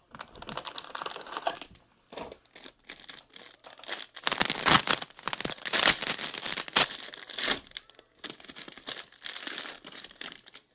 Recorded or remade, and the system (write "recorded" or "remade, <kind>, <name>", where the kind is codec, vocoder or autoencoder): recorded